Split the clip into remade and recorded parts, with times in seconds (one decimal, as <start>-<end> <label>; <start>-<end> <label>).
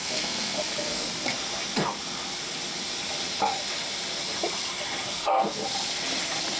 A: 0.0-1.1 remade; 1.1-5.1 recorded; 5.1-5.6 remade; 5.6-6.6 recorded